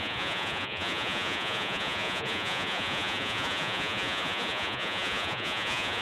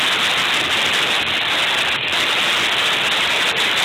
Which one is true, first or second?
second